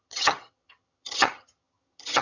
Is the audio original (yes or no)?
no